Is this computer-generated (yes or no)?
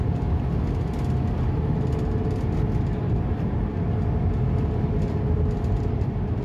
no